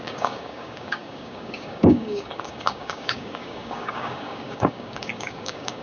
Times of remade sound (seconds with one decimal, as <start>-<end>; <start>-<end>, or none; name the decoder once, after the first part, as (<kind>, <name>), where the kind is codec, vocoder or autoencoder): 0.0-5.8 (codec, DAC)